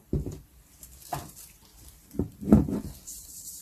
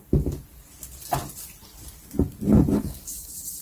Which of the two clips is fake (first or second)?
first